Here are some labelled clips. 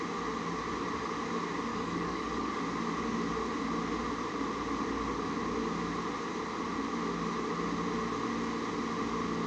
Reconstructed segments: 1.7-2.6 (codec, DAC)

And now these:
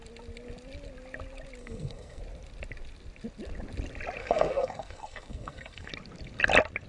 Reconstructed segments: 1.6-2.2 (codec, SNAC); 4.2-5.9

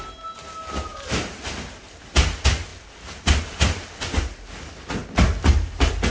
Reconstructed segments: 0.9-2.0 (vocoder, BigVGAN v2)

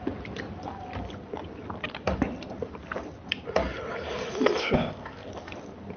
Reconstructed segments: 4.6-5.3 (codec, ZipCodec)

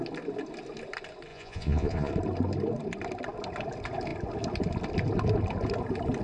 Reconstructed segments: 1.3-2.1 (vocoder, Vocos)

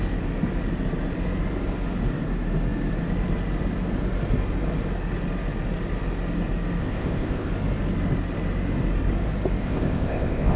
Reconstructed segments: 6.8-7.5 (codec, ZipCodec); 9.6-10.6

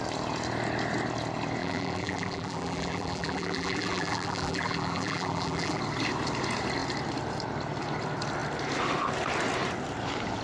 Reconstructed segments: 1.6-5.8 (vocoder, BigVGAN v2)